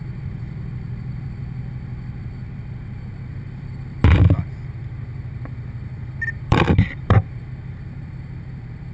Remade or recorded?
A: remade